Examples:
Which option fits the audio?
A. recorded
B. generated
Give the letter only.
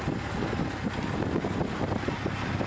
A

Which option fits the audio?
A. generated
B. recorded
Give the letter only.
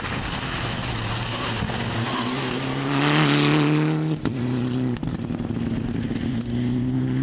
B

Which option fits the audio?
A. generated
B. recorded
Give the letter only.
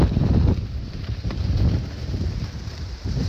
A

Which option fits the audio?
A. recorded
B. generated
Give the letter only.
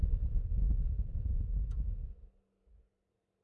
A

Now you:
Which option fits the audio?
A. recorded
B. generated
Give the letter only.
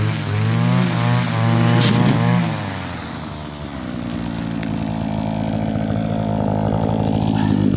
A